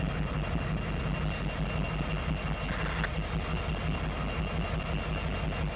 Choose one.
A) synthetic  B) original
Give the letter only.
B